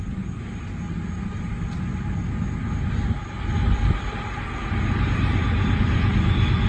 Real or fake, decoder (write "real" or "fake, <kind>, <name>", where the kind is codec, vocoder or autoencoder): real